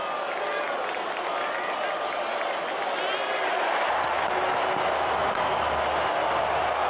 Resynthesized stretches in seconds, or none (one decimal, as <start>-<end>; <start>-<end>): none